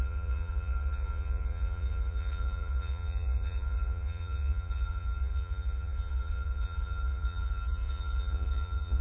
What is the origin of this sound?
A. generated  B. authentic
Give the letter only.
A